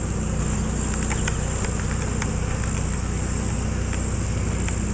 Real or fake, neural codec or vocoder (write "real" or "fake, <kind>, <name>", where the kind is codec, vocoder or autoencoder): real